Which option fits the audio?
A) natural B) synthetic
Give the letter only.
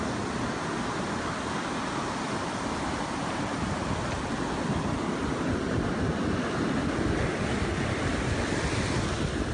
A